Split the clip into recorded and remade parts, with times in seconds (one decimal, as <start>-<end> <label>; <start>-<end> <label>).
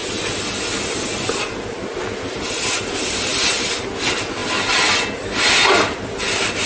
0.0-6.7 recorded